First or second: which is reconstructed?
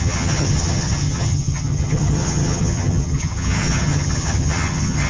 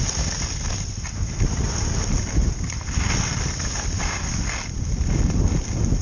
first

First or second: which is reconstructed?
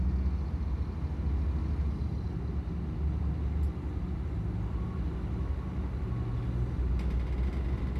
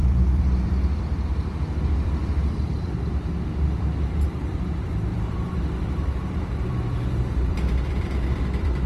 second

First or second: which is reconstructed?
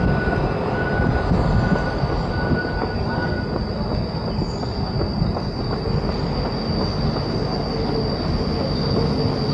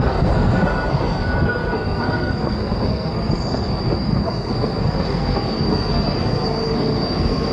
second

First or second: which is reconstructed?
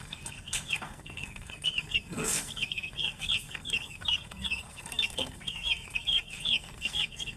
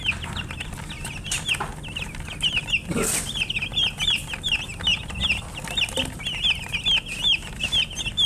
first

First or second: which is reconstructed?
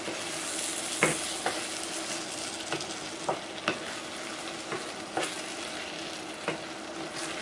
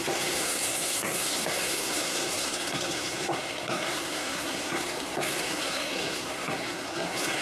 second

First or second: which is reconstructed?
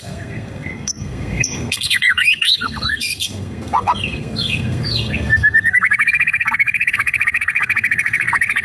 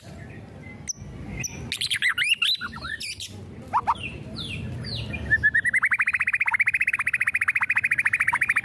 first